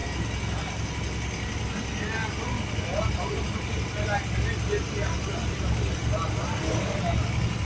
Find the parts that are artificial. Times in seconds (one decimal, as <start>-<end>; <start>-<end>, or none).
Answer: none